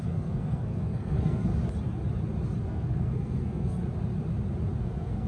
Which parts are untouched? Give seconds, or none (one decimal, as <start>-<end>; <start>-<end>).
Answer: 1.5-2.6; 3.8-4.8